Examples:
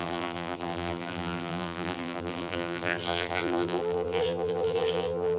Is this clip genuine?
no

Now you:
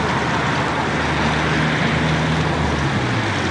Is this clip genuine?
yes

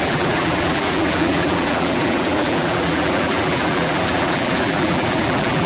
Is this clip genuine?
no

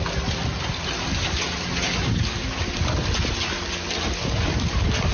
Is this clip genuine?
yes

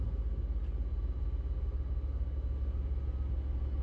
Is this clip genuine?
yes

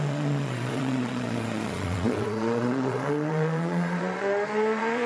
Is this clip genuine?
no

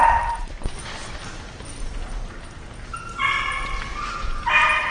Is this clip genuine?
yes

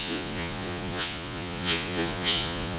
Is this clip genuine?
no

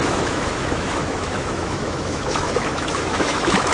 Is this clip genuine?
no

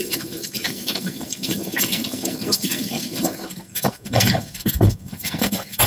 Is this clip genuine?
no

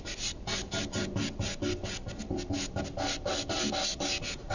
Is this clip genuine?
yes